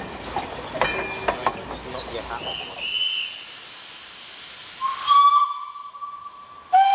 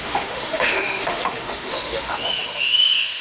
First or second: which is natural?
first